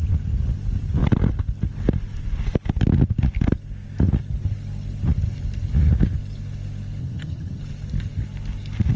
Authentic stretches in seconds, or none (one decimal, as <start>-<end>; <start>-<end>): 0.0-7.0; 7.6-9.0

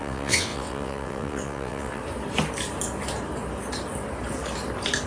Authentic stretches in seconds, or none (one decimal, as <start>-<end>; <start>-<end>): 2.0-5.1

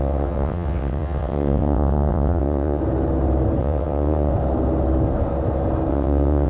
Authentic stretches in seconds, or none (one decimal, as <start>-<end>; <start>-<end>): 2.8-3.6; 4.3-5.9

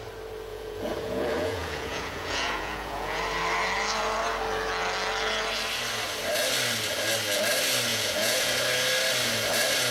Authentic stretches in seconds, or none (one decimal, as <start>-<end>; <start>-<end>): 0.0-0.5; 3.2-7.9; 8.5-9.9

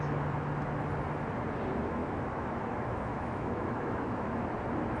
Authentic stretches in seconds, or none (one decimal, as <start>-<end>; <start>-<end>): 0.0-2.0; 4.3-5.0

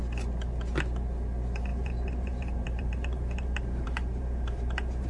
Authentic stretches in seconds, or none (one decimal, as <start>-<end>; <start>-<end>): 0.0-1.7

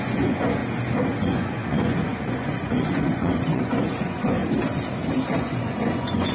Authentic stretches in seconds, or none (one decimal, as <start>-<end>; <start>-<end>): 0.6-1.2; 4.4-5.4